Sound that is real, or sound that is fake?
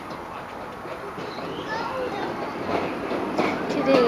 real